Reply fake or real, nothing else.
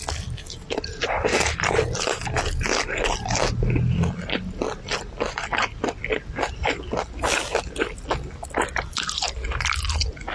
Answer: real